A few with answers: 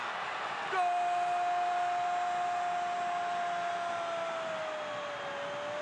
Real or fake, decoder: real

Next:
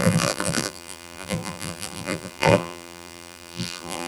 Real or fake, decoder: fake, vocoder, BigVGAN v2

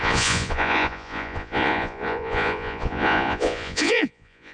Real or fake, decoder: fake, vocoder, Vocos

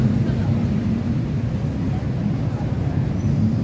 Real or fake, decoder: real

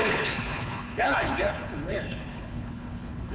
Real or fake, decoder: fake, codec, HILCodec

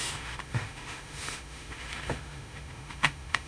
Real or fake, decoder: fake, autoencoder, DAC-VAE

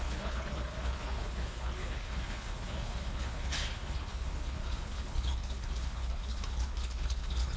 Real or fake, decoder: fake, codec, HILCodec